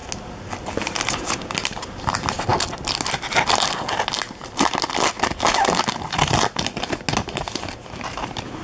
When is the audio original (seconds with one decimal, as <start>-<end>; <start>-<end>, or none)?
0.0-8.6